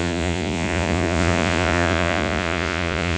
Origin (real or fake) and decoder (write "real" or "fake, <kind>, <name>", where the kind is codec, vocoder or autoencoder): fake, vocoder, Vocos